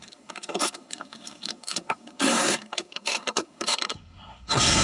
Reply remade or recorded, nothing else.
remade